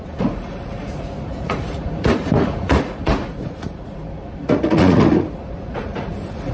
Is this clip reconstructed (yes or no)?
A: yes